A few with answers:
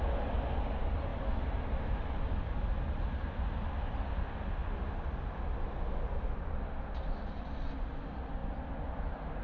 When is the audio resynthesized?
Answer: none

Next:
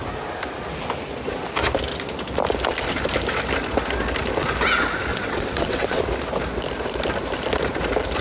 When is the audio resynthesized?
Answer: 5.1-6.0

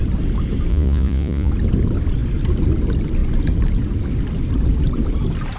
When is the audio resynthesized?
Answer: 0.7-1.5